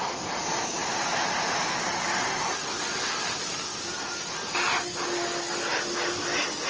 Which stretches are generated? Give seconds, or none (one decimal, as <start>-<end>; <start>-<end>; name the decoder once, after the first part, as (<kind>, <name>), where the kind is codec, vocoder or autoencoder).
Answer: none